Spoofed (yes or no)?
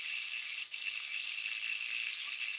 no